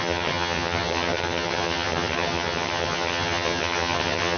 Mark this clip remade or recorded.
remade